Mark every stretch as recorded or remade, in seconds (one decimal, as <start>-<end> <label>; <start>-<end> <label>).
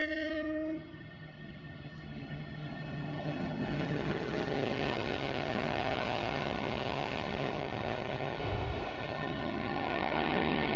0.0-8.4 remade; 8.4-9.0 recorded; 9.0-10.8 remade